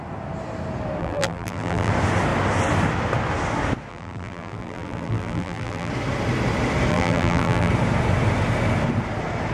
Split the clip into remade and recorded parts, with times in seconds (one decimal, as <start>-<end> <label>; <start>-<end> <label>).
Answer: 0.0-1.0 recorded; 1.0-1.9 remade; 1.9-3.9 recorded; 3.9-5.9 remade; 5.9-6.9 recorded; 6.9-7.7 remade; 7.7-9.5 recorded